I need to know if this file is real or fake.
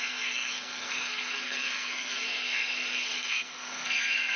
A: fake